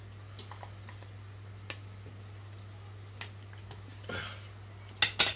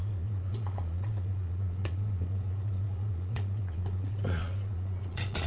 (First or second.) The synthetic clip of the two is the second